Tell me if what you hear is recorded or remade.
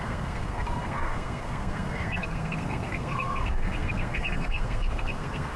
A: remade